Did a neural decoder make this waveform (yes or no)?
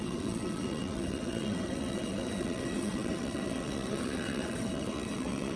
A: yes